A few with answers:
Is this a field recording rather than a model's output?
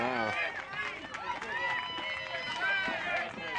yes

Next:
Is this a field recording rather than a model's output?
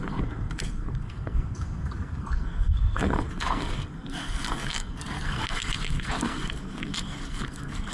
no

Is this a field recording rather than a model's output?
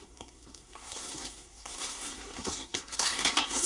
no